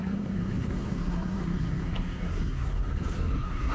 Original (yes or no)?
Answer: no